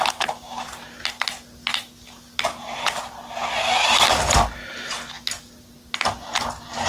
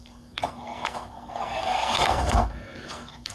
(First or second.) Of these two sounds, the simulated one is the second